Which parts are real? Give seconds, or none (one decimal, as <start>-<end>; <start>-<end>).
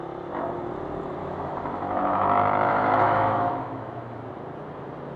0.0-1.2; 4.3-5.2